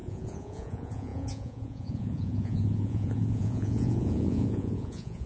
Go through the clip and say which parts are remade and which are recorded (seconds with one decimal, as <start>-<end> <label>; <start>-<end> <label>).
0.0-5.3 remade